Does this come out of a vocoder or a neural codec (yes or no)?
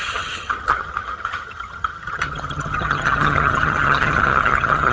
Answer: yes